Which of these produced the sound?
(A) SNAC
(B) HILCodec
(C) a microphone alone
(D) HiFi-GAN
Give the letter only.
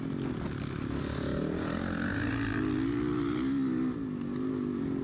C